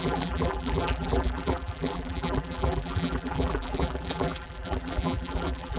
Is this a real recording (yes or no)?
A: no